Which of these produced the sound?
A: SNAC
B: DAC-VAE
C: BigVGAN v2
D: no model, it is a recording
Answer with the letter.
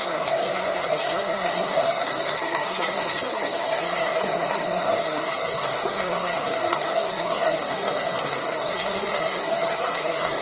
A